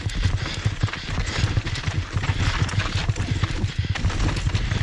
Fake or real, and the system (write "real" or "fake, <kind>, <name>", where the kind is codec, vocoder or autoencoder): real